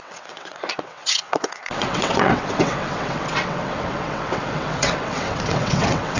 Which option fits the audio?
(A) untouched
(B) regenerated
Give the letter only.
B